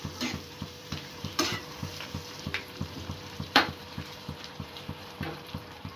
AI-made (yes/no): yes